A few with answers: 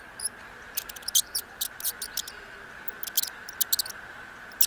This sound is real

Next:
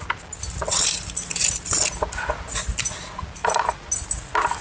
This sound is real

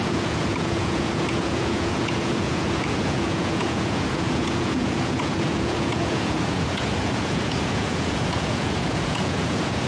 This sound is fake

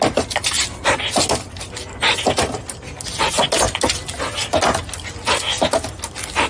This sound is real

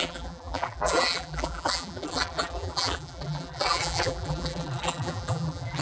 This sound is fake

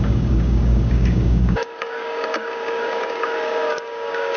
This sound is fake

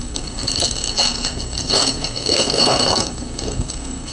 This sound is fake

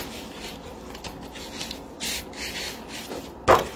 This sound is real